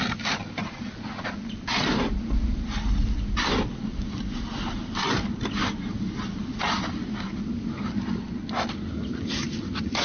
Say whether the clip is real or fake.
real